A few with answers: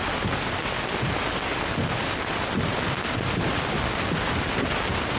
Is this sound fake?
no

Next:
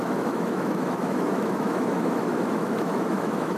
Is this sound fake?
yes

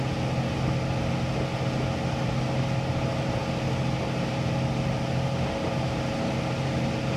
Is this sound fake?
no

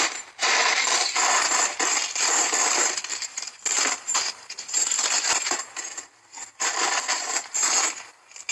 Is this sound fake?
yes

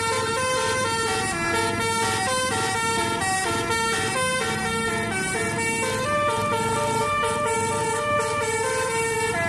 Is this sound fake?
no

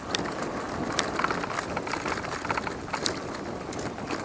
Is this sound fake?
no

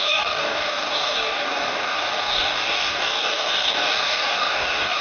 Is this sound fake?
yes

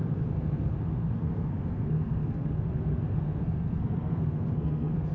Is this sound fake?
yes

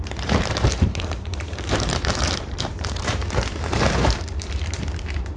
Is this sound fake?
yes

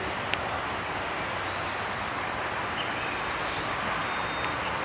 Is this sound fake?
no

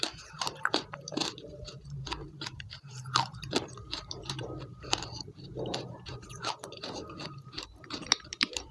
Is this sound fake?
yes